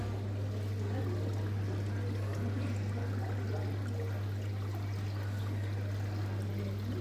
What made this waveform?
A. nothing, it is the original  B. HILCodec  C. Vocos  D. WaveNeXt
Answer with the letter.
A